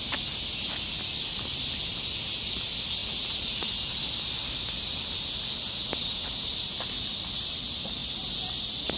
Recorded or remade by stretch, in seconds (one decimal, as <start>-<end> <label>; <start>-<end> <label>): 0.0-3.0 recorded; 3.0-3.7 remade; 3.7-9.0 recorded